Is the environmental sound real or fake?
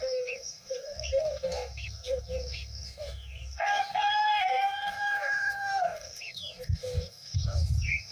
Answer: fake